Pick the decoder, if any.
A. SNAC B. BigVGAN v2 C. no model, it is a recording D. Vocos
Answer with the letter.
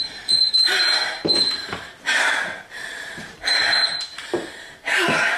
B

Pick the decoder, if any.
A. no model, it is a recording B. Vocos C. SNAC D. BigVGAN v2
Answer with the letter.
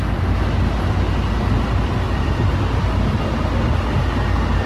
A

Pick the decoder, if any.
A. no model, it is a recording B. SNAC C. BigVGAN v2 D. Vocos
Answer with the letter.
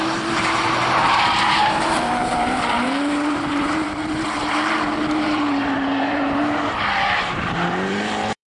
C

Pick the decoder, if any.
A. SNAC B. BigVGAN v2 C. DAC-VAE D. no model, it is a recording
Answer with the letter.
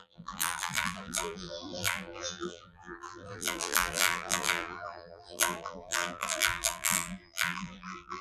B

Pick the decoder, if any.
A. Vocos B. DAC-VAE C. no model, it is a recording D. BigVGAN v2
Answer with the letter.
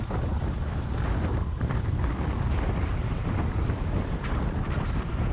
D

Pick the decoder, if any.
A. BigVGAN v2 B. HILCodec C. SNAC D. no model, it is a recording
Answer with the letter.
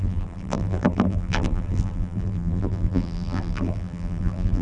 A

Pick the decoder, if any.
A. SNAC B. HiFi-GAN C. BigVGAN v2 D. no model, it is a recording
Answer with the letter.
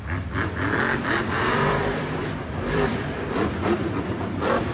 C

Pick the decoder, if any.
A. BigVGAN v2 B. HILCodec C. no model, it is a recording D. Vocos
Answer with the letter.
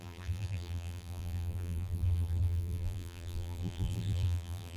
A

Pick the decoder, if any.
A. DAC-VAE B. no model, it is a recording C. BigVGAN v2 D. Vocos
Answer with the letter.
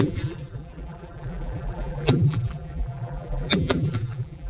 C